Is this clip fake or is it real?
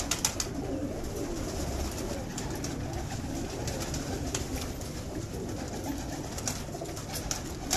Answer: real